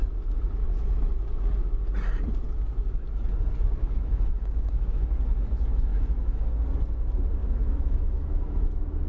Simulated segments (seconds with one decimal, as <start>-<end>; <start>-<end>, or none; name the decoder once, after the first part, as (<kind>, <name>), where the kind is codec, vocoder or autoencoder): 3.8-5.0 (autoencoder, DAC-VAE); 5.9-6.5; 7.4-8.7